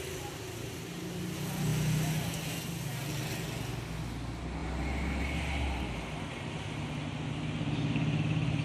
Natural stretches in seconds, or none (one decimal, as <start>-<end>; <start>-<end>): 0.0-8.6